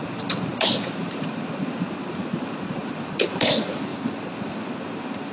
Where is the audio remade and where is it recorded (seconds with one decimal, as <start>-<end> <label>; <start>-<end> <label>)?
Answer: 0.0-2.8 remade; 2.8-3.5 recorded; 3.5-3.9 remade; 3.9-4.7 recorded; 4.7-5.3 remade